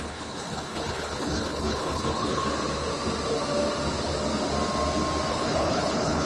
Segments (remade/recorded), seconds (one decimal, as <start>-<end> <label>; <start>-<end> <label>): 0.0-2.4 remade; 2.4-5.3 recorded; 5.3-6.3 remade